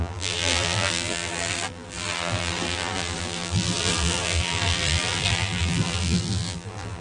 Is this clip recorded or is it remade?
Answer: remade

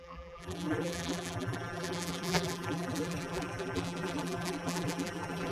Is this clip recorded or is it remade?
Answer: remade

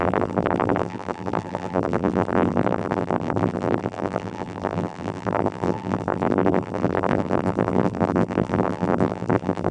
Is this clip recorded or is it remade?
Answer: remade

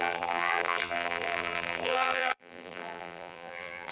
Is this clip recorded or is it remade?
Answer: remade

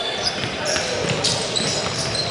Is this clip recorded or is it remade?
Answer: remade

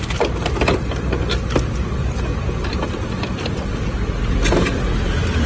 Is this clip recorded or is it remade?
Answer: remade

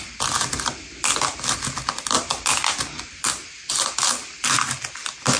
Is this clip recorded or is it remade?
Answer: recorded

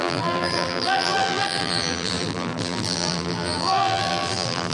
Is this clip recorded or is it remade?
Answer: remade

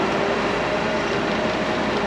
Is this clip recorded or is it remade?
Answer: recorded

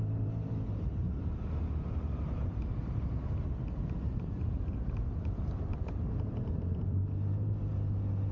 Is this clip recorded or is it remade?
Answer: remade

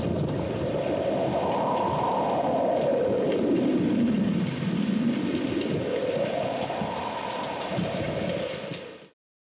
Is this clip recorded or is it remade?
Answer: recorded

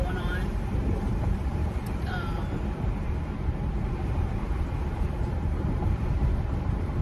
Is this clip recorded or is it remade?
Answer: remade